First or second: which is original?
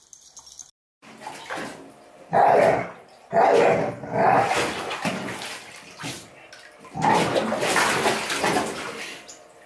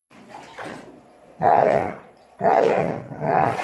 first